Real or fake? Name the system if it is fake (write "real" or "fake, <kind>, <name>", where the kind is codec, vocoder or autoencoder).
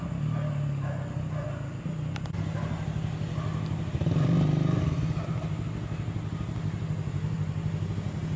real